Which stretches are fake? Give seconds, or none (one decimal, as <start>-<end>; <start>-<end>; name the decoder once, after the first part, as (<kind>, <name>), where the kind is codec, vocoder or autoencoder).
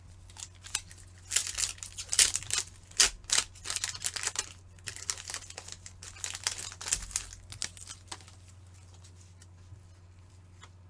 none